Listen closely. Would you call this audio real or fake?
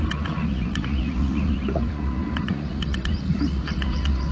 fake